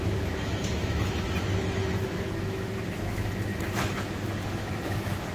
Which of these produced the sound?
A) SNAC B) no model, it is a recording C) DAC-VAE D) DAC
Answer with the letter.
C